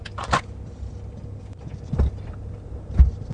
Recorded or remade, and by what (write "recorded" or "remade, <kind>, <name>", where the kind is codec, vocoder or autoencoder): remade, vocoder, BigVGAN v2